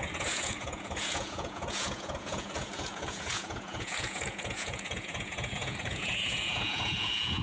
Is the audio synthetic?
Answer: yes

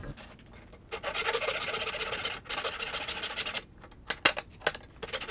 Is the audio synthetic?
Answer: no